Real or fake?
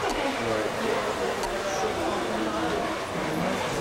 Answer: real